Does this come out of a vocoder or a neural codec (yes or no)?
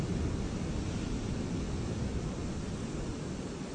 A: no